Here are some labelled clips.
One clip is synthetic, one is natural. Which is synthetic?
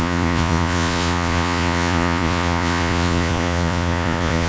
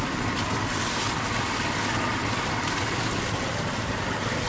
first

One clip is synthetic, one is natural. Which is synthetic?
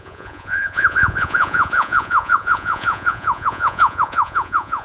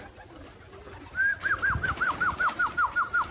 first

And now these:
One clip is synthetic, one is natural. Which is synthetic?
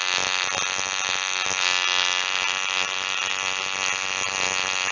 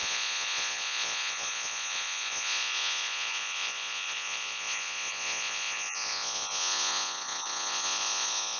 second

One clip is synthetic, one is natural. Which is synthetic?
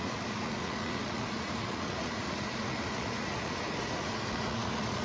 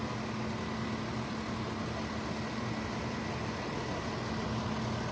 first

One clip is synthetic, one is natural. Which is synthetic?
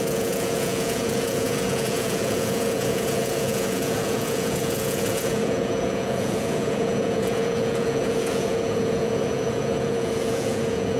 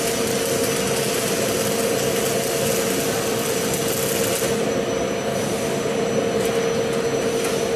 first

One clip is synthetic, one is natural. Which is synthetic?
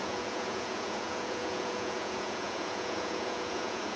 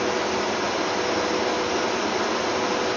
first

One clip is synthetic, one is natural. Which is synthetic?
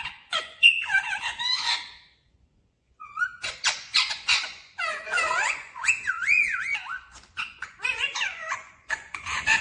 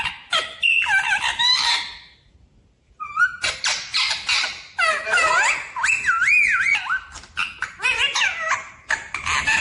first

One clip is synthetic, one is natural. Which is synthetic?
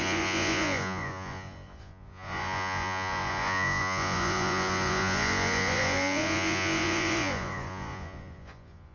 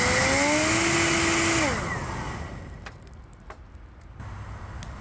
first